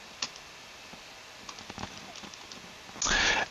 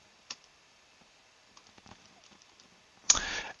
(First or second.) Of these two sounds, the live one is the first